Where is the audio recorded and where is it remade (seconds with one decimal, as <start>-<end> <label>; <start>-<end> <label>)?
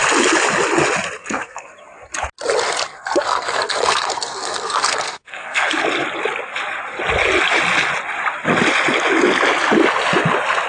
0.0-1.2 recorded; 1.2-1.7 remade; 1.7-2.9 recorded; 2.9-5.7 remade; 5.7-10.7 recorded